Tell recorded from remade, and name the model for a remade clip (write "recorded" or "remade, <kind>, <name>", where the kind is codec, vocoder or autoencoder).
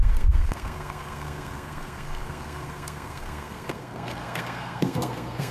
remade, codec, SNAC